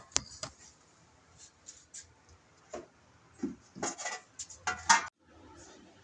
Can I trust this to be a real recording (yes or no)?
yes